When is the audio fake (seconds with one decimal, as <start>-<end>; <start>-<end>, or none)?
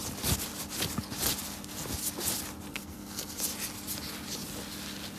2.7-3.4